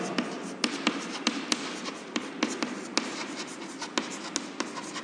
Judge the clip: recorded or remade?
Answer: recorded